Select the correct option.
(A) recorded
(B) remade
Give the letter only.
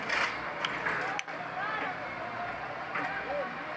A